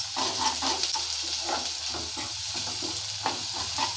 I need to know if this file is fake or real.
real